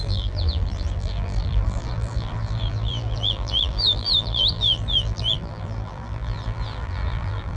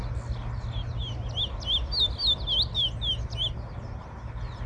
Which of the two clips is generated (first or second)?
first